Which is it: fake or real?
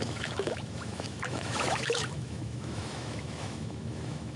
fake